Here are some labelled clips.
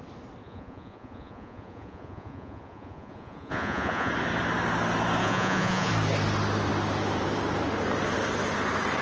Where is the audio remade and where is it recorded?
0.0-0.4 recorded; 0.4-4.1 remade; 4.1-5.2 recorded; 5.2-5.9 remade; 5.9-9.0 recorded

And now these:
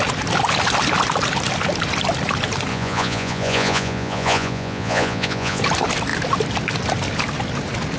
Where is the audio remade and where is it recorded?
0.0-2.7 recorded; 2.7-5.6 remade; 5.6-8.0 recorded

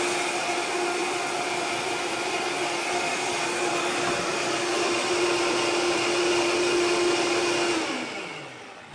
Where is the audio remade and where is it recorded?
0.0-8.9 recorded

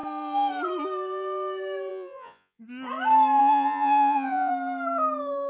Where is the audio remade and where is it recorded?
0.0-1.9 recorded; 1.9-2.6 remade; 2.6-3.4 recorded; 3.4-4.5 remade; 4.5-5.5 recorded